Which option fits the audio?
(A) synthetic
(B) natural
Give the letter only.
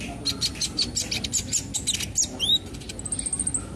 B